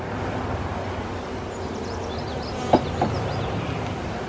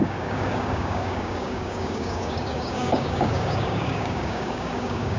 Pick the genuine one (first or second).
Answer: first